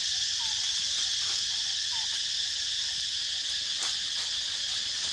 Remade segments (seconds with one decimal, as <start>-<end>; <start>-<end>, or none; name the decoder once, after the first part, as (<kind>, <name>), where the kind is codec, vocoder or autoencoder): none